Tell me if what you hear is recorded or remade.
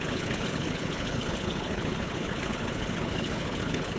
remade